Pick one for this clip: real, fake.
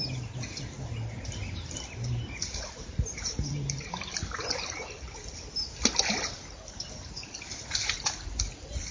real